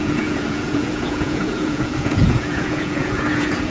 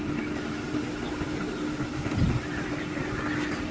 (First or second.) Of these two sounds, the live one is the second